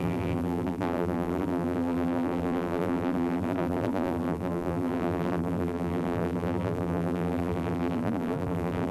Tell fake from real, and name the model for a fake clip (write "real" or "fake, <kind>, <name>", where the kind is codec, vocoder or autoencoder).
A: fake, vocoder, BigVGAN v2